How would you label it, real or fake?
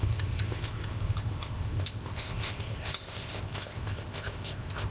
fake